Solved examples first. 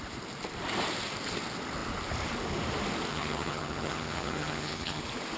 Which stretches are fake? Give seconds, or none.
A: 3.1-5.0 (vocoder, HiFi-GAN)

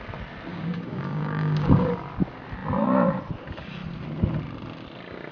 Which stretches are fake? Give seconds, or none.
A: 0.5-1.9 (codec, DAC)

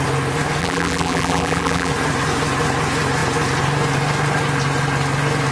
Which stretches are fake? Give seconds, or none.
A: 0.6-1.9 (vocoder, BigVGAN v2)